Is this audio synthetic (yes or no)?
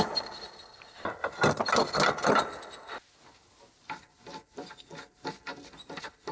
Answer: no